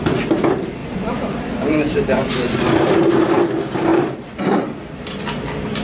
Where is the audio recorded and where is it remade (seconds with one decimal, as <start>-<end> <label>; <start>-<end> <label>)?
0.0-0.8 recorded; 0.8-3.4 remade; 3.4-3.9 recorded; 3.9-5.2 remade; 5.2-5.8 recorded